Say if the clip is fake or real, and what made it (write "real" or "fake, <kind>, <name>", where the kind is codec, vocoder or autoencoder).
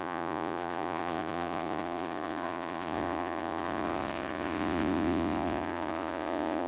fake, vocoder, Vocos